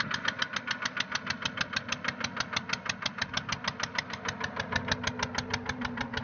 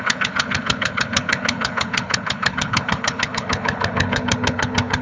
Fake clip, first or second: second